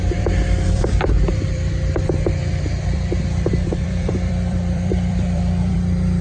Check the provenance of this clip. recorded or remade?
remade